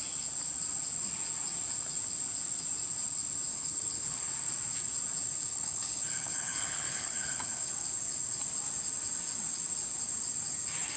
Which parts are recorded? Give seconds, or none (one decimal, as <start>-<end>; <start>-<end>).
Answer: 0.0-3.5; 4.3-5.5; 7.7-11.0